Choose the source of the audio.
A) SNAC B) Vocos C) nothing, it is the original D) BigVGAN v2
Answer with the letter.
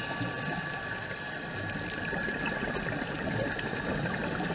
C